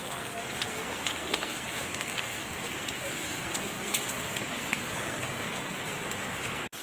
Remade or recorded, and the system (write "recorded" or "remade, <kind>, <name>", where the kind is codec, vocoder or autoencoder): remade, codec, SNAC